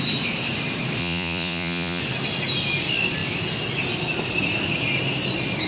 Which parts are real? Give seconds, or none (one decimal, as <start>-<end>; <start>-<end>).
0.0-1.0; 2.0-5.7